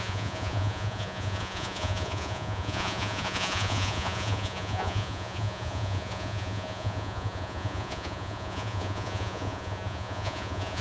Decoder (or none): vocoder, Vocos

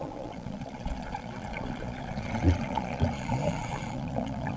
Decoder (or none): vocoder, Vocos